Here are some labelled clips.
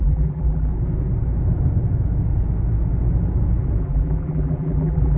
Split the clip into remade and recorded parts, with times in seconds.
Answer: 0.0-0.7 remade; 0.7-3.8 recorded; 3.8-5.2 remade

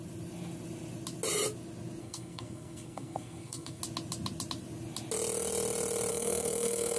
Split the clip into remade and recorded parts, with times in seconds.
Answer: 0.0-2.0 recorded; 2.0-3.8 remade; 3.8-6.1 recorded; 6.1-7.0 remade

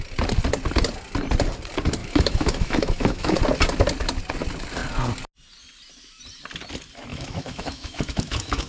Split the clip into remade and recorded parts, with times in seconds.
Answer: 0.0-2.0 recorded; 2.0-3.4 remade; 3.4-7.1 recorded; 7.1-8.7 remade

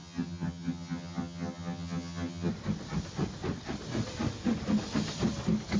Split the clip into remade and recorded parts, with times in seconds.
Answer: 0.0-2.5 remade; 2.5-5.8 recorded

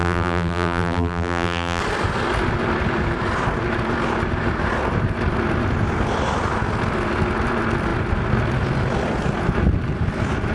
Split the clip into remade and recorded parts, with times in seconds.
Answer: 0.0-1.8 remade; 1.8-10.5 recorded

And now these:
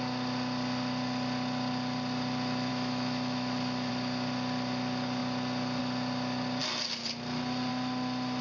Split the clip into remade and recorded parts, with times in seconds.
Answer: 0.0-2.7 recorded; 2.7-3.9 remade; 3.9-8.4 recorded